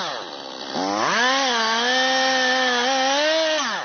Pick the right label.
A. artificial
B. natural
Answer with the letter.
B